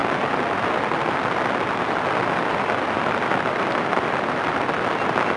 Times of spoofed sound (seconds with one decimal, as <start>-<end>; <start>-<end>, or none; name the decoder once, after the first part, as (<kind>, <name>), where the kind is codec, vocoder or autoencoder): none